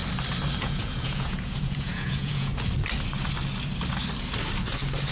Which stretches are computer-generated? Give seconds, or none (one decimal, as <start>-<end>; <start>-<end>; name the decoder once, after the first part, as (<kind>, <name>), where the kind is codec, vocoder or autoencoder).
0.6-2.5 (vocoder, Vocos)